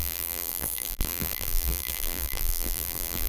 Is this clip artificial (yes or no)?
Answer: yes